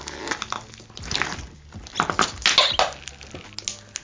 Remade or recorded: recorded